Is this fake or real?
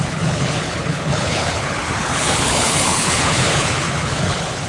fake